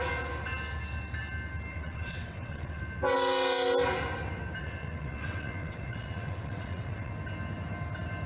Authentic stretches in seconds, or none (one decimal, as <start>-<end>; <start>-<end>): 0.0-1.7; 2.8-4.6; 7.1-8.3